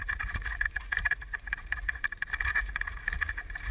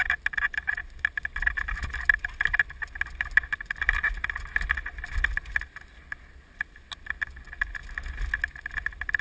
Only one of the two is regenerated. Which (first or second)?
first